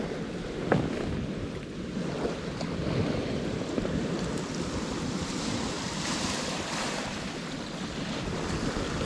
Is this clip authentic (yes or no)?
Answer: yes